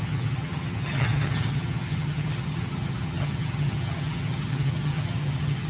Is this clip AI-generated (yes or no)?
yes